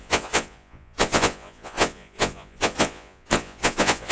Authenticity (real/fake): fake